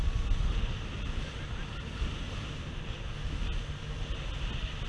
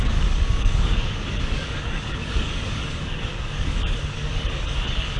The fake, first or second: second